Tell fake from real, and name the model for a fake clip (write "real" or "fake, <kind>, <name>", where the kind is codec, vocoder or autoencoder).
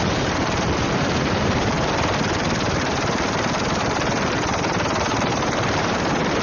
fake, vocoder, BigVGAN v2